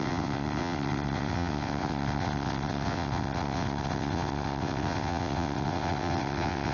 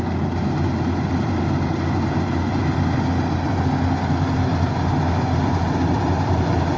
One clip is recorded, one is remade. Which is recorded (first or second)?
second